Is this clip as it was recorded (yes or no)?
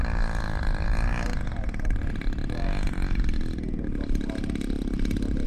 yes